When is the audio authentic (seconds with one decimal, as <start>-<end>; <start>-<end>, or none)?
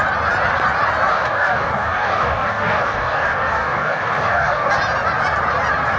0.0-1.1; 4.7-6.0